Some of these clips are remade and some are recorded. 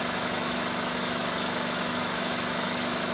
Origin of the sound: remade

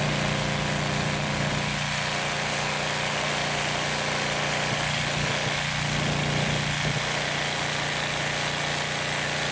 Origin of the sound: recorded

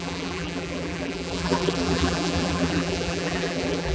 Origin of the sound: remade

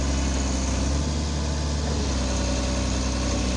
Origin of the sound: recorded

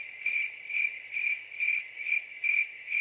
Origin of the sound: recorded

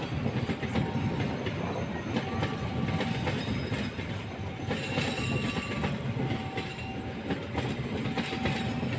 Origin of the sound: recorded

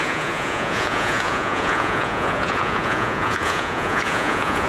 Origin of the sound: remade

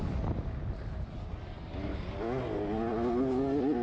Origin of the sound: recorded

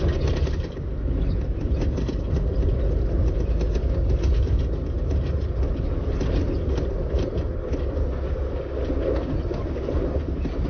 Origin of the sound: recorded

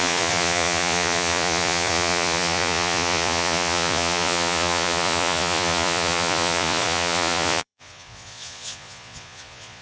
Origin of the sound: remade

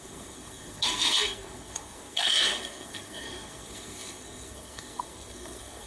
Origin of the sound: remade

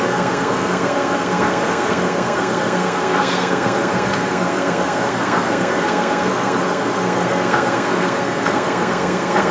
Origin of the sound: remade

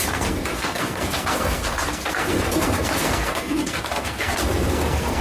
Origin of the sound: remade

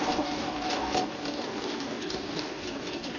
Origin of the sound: remade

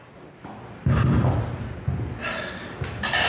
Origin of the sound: recorded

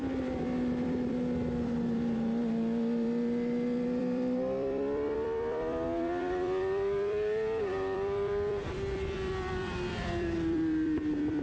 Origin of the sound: remade